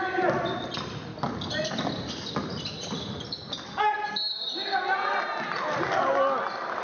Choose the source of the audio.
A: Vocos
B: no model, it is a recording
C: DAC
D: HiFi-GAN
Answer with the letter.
B